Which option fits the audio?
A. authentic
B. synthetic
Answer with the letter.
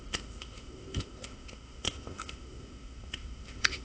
B